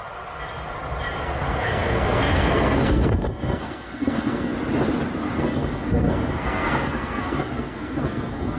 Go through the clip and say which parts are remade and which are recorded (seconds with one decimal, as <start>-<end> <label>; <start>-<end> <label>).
0.0-1.2 recorded; 1.2-4.5 remade; 4.5-5.4 recorded; 5.4-8.6 remade